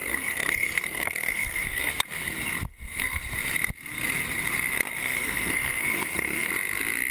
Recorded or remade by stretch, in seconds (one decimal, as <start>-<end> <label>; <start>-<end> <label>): 0.0-1.9 remade; 1.9-2.7 recorded; 2.7-3.2 remade; 3.2-5.0 recorded; 5.0-6.5 remade; 6.5-7.1 recorded

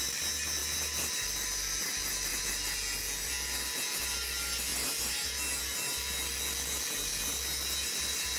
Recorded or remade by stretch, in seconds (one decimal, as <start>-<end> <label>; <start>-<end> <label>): 0.0-8.4 recorded

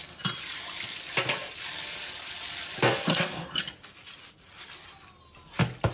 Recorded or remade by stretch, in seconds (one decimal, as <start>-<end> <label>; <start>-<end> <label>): 0.0-3.1 recorded; 3.1-3.6 remade; 3.6-5.9 recorded